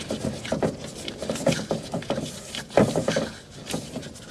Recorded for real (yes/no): yes